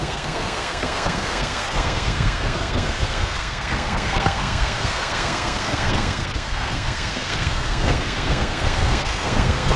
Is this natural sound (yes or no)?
no